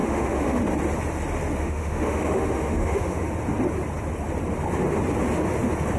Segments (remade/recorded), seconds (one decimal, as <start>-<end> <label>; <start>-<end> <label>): 0.0-0.6 remade; 0.6-1.6 recorded; 1.6-3.3 remade; 3.3-6.0 recorded